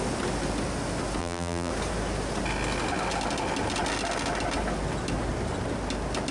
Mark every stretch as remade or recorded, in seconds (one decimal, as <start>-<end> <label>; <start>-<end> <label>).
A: 0.0-1.2 recorded; 1.2-1.7 remade; 1.7-6.3 recorded